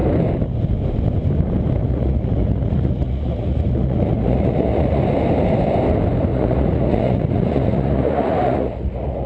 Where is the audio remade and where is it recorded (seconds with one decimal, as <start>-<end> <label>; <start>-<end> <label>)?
0.0-1.8 recorded; 1.8-5.0 remade; 5.0-6.3 recorded; 6.3-9.3 remade